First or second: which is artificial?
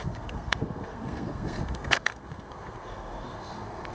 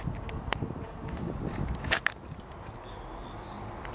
first